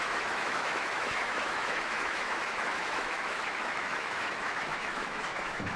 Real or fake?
fake